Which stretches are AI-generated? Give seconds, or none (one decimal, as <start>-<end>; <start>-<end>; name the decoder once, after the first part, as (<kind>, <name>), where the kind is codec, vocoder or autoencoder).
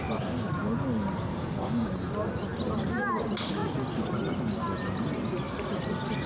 1.3-1.9 (codec, DAC)